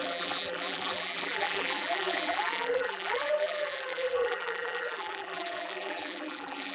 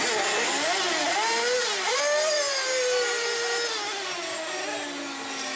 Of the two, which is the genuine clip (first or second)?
second